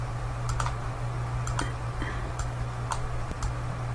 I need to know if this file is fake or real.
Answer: real